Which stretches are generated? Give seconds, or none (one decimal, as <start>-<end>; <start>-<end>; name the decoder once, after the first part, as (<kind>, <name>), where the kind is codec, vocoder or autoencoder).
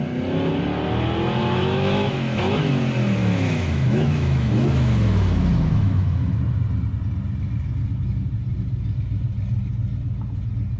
1.4-2.7 (autoencoder, DAC-VAE); 3.2-6.3